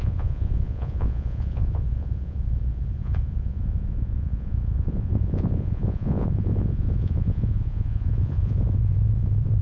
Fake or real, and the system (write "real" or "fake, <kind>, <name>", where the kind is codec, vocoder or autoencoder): fake, vocoder, Vocos